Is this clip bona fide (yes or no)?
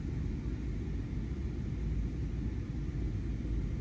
yes